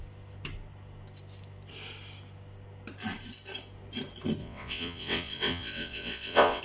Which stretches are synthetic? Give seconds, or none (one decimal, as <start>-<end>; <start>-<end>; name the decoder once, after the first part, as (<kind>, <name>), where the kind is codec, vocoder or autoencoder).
4.4-6.6 (vocoder, WaveNeXt)